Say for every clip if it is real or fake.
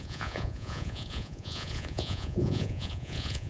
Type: fake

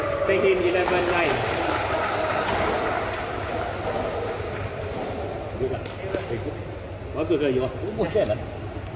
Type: real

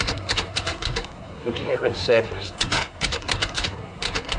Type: fake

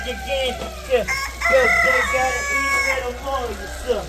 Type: real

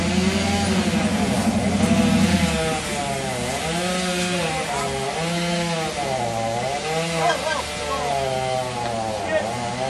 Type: real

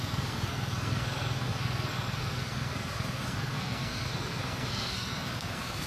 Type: fake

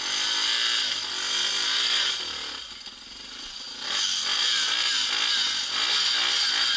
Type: real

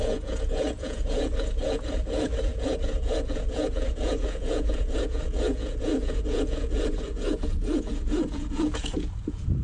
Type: fake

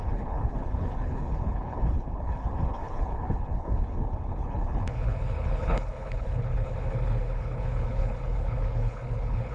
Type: fake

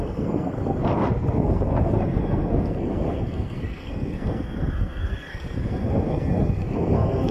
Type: fake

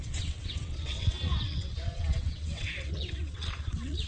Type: fake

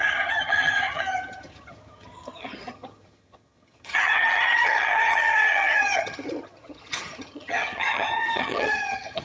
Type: fake